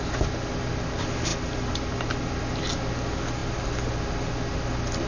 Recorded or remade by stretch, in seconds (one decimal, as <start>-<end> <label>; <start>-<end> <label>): 0.0-5.1 recorded